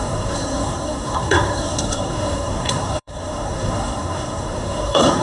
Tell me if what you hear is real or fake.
fake